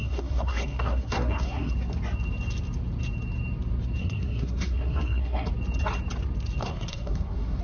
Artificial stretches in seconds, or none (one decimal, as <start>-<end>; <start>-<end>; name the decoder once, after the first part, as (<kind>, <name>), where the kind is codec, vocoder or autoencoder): 0.0-1.7 (codec, SNAC); 4.0-5.5; 6.6-7.6